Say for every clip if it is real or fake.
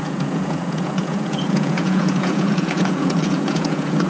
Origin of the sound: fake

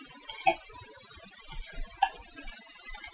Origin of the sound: real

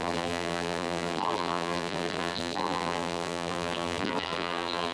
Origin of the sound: fake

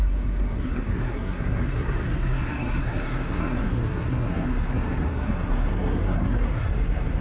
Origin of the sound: fake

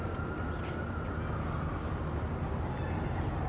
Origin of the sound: real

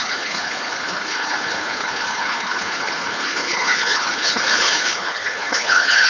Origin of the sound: fake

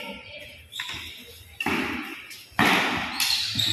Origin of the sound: real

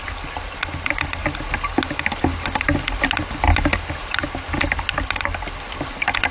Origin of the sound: real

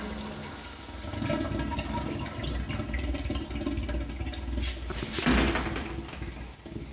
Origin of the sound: real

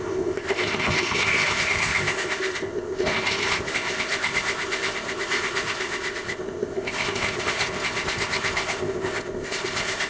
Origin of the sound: fake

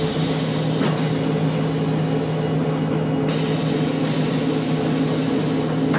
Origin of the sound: real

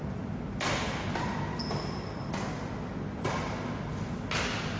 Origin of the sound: real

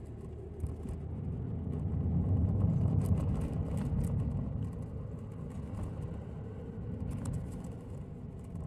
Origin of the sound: real